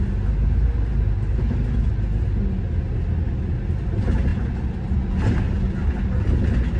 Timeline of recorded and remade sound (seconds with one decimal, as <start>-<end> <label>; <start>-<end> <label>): 0.0-6.8 recorded

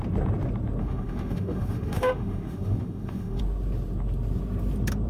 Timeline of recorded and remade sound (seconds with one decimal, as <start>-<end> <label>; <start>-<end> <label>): 0.0-0.8 recorded; 0.8-3.4 remade; 3.4-5.1 recorded

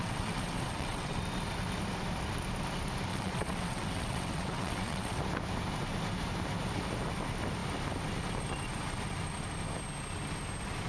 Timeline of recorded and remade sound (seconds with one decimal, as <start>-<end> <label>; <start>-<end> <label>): 0.0-1.2 remade; 1.2-3.1 recorded; 3.1-5.2 remade; 5.2-10.9 recorded

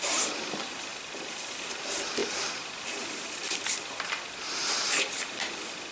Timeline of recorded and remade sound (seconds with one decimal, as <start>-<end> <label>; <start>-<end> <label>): 0.0-0.9 recorded; 0.9-1.5 remade; 1.5-5.9 recorded

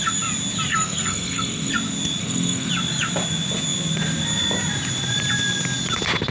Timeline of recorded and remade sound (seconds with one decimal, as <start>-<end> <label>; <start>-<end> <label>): 0.0-0.7 recorded; 0.7-1.7 remade; 1.7-2.2 recorded; 2.2-2.7 remade; 2.7-6.3 recorded

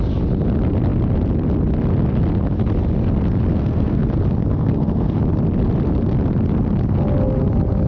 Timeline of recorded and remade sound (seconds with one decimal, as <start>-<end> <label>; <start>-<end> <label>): 0.0-3.5 recorded; 3.5-4.1 remade; 4.1-4.5 recorded; 4.5-5.2 remade; 5.2-7.9 recorded

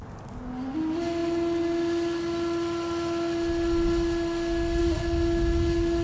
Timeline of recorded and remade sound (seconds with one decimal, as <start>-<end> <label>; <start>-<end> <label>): 0.0-6.0 recorded

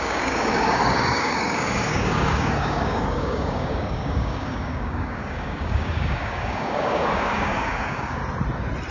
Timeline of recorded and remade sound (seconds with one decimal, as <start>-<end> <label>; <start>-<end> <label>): 0.0-8.2 remade; 8.2-8.9 recorded